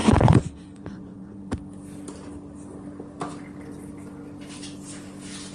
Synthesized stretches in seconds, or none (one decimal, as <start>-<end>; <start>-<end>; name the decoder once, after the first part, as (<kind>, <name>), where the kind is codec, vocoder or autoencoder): 0.0-1.4 (vocoder, Vocos)